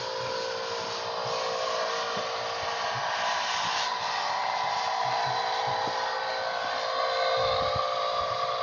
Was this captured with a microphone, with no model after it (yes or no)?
yes